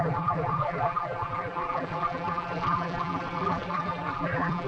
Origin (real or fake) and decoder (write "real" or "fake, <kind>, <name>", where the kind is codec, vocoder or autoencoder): fake, vocoder, BigVGAN v2